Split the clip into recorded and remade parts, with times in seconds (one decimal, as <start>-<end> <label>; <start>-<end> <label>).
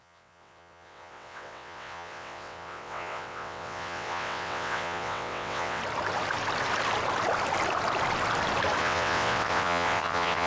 0.0-5.8 remade; 5.8-8.8 recorded; 8.8-10.5 remade